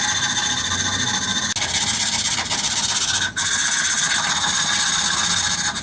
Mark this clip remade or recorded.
recorded